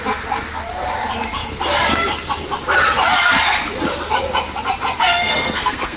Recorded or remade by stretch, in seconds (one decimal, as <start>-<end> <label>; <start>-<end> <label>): 0.0-5.1 recorded; 5.1-6.0 remade